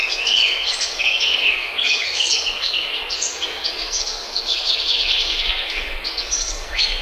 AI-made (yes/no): yes